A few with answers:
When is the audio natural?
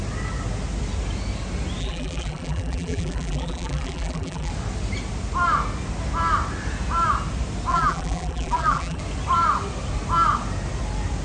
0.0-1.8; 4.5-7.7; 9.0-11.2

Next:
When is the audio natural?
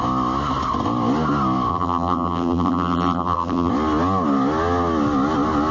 0.0-1.7; 3.7-5.7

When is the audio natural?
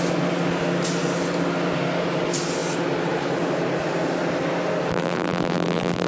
0.0-4.9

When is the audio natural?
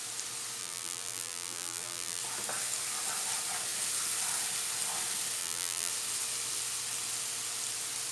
0.0-0.6; 2.2-5.4; 5.9-8.1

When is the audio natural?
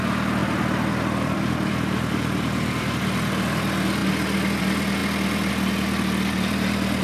0.0-0.4; 2.9-7.0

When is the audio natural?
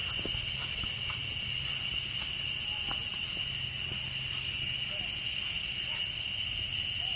0.0-7.2